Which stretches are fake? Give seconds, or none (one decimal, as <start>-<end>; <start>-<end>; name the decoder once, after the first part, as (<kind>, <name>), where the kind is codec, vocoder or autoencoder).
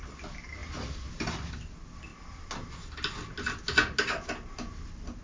none